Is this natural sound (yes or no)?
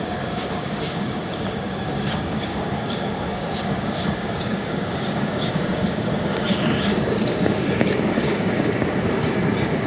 no